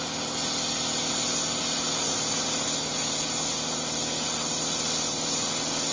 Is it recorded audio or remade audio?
recorded